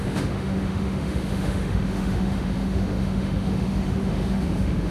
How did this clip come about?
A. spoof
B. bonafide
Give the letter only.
A